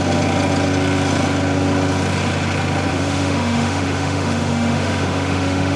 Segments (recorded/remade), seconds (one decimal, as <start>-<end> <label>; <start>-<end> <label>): 0.0-2.9 recorded; 2.9-5.8 remade